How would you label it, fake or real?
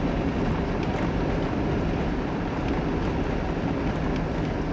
real